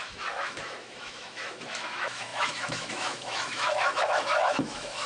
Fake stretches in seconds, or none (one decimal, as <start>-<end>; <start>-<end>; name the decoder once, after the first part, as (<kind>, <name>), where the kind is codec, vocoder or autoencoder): 0.0-5.1 (autoencoder, DAC-VAE)